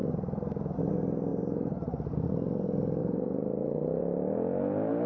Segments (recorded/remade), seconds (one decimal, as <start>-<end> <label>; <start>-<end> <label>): 0.0-0.9 remade; 0.9-1.3 recorded; 1.3-2.3 remade; 2.3-3.0 recorded; 3.0-4.0 remade; 4.0-5.1 recorded